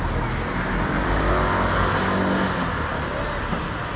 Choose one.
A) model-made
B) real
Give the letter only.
B